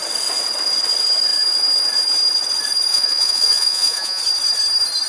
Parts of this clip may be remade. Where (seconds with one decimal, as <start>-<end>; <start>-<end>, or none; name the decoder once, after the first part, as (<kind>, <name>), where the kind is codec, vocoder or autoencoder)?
2.9-4.2 (vocoder, Vocos)